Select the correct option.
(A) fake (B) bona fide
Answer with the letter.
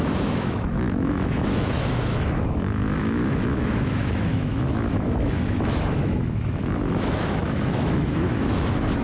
A